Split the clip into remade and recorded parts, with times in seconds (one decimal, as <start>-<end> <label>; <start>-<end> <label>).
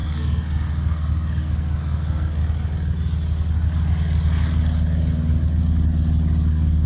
0.0-2.4 remade; 2.4-6.5 recorded; 6.5-6.9 remade